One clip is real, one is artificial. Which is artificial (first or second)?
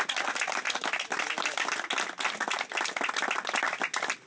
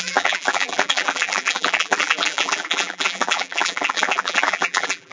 second